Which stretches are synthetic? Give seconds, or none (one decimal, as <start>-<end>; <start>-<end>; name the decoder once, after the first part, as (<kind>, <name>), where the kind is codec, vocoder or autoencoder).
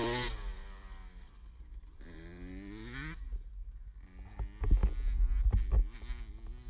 none